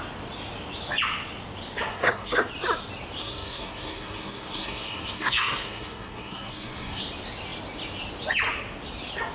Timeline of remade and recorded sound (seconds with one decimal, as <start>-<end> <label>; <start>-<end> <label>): 0.0-1.9 recorded; 1.9-2.5 remade; 2.5-3.2 recorded; 3.2-7.0 remade; 7.0-9.3 recorded